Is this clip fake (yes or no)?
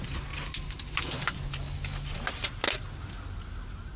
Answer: no